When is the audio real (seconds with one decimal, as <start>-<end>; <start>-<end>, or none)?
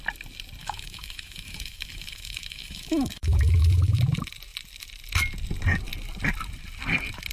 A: 0.0-0.6; 4.0-7.3